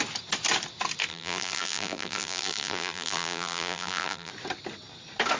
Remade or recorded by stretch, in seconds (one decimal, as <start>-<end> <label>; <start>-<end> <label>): 0.0-1.1 recorded; 1.1-4.3 remade; 4.3-5.4 recorded